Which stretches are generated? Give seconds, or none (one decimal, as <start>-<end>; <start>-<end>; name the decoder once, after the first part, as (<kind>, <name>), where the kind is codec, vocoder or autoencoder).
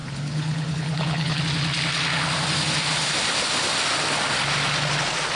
0.0-1.4 (codec, HILCodec)